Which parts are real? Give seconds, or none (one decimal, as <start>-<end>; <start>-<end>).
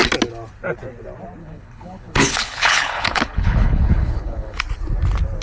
0.0-1.4; 4.6-5.4